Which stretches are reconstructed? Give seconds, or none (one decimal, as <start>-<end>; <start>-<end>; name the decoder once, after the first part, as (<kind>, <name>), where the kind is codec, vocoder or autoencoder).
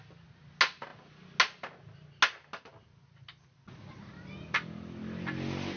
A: none